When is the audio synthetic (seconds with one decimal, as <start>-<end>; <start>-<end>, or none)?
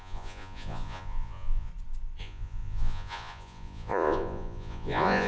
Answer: 0.0-1.7; 2.2-5.3